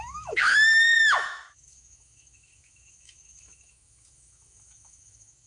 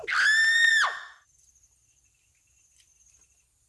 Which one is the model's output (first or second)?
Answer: first